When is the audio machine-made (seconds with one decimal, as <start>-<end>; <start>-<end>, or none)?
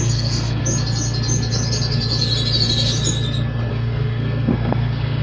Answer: 0.0-0.6; 3.7-5.2